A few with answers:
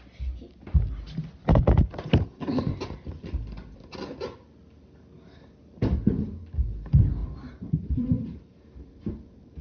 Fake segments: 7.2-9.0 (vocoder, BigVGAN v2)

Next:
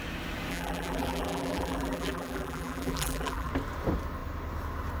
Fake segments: 0.5-3.5 (vocoder, BigVGAN v2)

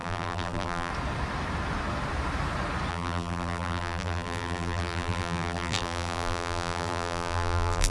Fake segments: 0.0-0.9 (vocoder, BigVGAN v2); 2.9-7.9

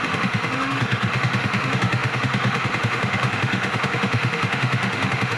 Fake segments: 0.0-5.4 (autoencoder, DAC-VAE)